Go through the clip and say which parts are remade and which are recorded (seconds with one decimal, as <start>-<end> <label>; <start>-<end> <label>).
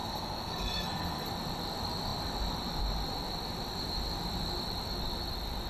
0.0-1.3 remade; 1.3-5.7 recorded